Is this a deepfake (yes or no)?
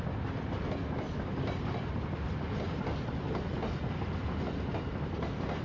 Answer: no